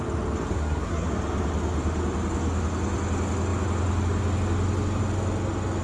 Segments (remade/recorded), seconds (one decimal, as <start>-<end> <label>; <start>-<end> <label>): 0.0-0.5 recorded; 0.5-1.1 remade; 1.1-5.8 recorded